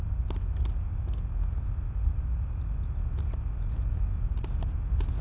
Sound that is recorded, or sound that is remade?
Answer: recorded